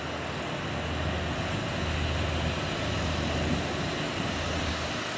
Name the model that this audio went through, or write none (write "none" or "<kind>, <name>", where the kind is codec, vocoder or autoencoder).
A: none